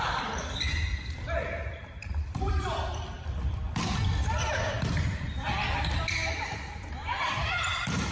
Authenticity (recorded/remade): remade